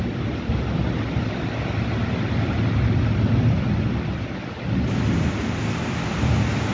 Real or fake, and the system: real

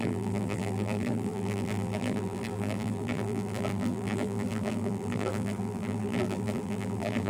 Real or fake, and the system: fake, vocoder, BigVGAN v2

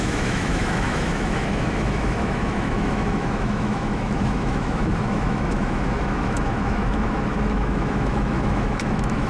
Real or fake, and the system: fake, autoencoder, DAC-VAE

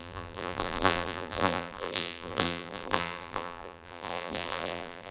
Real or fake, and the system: fake, vocoder, BigVGAN v2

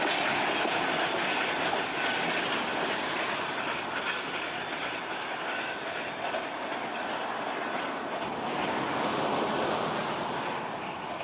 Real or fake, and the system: real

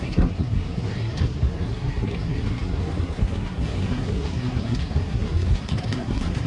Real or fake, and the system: fake, codec, SNAC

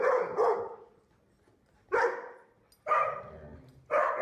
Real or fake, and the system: real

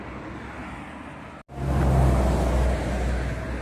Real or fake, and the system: real